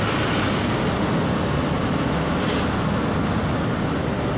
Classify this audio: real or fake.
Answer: real